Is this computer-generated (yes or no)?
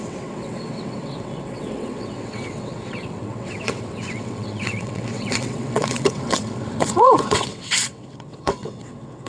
yes